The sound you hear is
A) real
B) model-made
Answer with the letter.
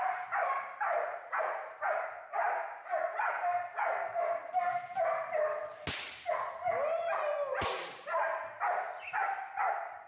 A